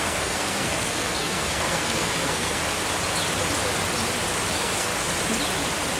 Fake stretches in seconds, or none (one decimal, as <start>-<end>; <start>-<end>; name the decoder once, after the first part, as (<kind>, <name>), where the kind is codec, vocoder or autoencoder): 0.0-2.6 (codec, SNAC); 4.5-4.9